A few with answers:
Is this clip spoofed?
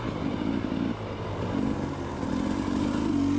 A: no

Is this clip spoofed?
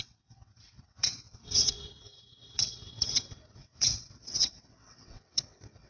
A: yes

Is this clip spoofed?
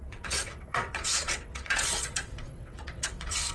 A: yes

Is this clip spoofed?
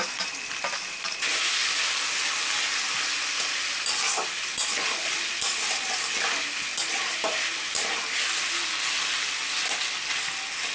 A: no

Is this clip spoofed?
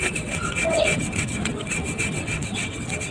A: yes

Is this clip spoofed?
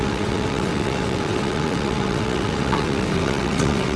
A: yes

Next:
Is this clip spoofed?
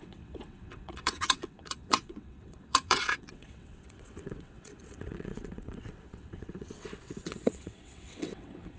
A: yes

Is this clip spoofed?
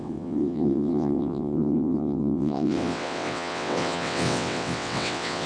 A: yes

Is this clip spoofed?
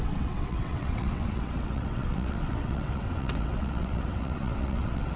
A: yes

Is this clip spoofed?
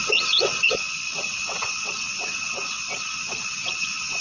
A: yes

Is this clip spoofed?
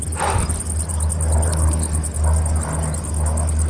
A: no